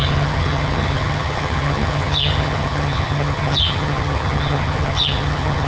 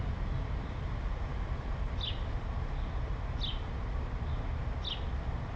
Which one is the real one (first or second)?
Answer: second